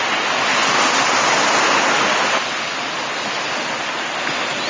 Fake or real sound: real